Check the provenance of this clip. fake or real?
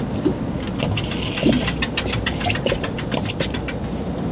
real